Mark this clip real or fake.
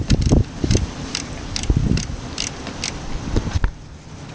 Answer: fake